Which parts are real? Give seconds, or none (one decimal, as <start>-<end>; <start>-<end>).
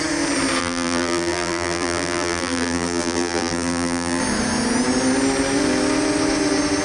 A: 0.0-0.6; 4.2-6.8